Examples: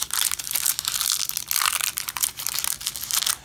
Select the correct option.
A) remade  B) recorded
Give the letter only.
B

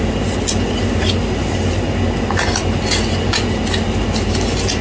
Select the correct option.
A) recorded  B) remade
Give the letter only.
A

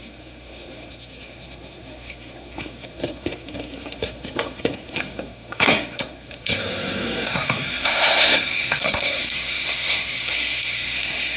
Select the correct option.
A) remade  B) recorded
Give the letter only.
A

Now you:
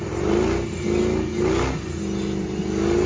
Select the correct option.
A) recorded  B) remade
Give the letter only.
A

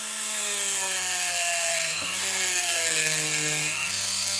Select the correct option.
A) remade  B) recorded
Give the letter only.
A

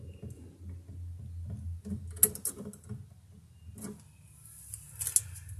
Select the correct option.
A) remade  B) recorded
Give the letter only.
B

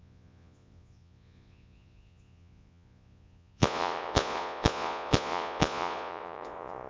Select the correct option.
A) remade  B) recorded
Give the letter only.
A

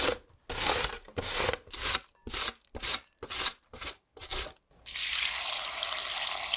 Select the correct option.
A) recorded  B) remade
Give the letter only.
A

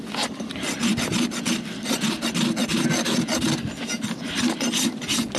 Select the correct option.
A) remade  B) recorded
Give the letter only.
B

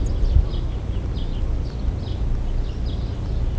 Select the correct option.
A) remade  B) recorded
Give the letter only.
B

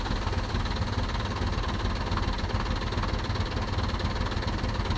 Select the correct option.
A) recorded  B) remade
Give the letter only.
A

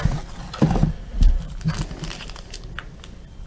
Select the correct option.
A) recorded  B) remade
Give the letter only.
A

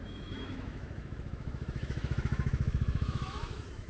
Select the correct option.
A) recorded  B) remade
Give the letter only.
B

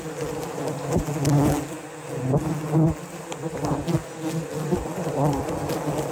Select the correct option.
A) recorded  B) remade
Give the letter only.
A